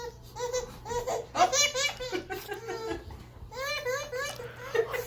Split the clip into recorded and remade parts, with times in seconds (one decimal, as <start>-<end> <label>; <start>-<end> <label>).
0.0-5.1 recorded